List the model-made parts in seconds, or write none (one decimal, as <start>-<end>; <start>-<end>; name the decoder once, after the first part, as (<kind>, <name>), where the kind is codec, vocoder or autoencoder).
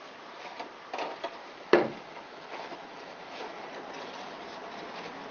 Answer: 1.4-3.6 (autoencoder, DAC-VAE)